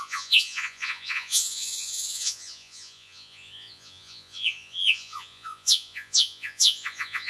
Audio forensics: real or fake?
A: fake